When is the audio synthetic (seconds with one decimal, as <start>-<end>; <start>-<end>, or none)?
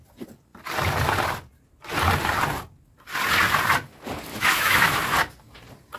4.3-5.0